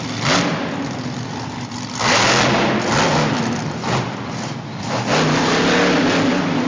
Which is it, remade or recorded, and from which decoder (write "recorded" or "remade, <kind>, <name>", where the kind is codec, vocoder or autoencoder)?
recorded